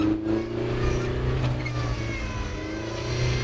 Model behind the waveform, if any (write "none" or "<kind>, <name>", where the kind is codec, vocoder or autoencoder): none